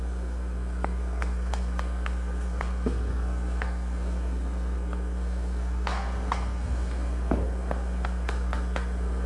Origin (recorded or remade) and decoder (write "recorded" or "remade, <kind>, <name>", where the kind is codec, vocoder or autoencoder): remade, codec, SNAC